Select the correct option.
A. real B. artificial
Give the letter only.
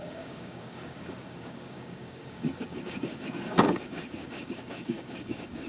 B